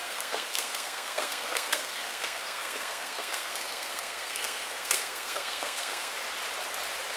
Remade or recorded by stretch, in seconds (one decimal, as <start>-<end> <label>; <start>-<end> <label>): 0.0-6.1 remade; 6.1-7.2 recorded